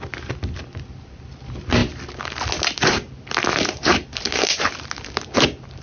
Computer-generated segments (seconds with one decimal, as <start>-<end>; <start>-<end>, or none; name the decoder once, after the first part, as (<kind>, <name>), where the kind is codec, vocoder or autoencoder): 3.5-4.7 (vocoder, BigVGAN v2)